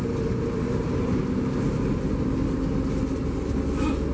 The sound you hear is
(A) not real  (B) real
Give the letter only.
B